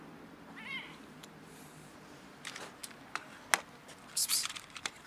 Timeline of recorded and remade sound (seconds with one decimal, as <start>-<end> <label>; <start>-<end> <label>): 0.0-2.8 remade; 2.8-4.1 recorded; 4.1-5.1 remade